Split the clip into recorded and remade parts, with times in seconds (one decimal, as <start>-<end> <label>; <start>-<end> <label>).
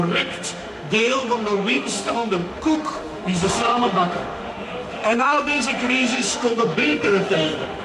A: 0.0-7.8 remade